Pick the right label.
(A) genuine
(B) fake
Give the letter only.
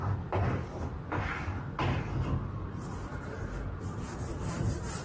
B